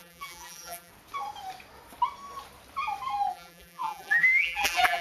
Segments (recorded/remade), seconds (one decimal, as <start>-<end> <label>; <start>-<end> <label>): 0.0-0.9 remade; 0.9-3.3 recorded; 3.3-5.0 remade